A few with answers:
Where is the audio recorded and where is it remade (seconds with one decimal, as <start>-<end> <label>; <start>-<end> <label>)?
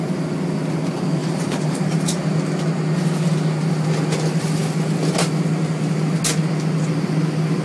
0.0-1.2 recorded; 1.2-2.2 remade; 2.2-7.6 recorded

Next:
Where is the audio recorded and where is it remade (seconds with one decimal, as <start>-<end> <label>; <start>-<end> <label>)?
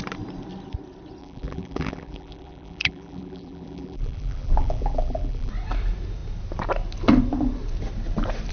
0.0-1.2 recorded; 1.2-5.5 remade; 5.5-8.5 recorded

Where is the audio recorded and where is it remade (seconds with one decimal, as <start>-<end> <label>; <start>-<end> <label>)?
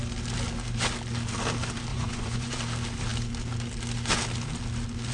0.0-1.9 recorded; 1.9-2.6 remade; 2.6-5.1 recorded